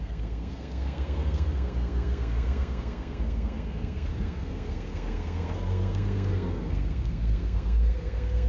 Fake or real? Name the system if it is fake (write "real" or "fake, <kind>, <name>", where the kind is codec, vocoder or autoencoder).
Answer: fake, codec, SNAC